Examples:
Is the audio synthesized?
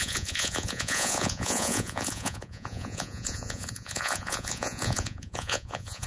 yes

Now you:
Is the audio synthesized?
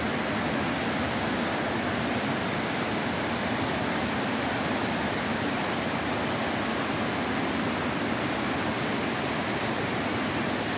no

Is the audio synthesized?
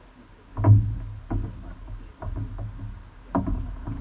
no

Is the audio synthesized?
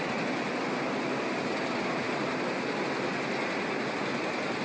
no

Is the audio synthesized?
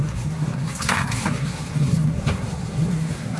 yes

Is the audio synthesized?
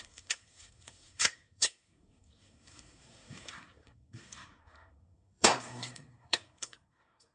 yes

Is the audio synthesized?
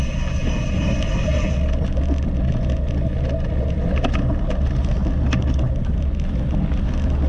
no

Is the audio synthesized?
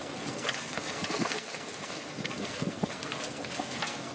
yes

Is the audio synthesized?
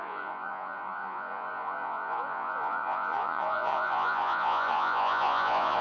yes